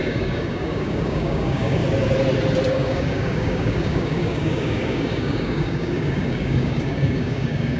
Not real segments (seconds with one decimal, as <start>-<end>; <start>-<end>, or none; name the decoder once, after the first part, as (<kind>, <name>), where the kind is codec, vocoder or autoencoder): 0.0-1.8 (codec, DAC); 2.7-7.8